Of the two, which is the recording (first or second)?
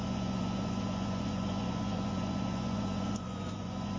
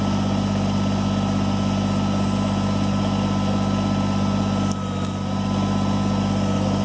second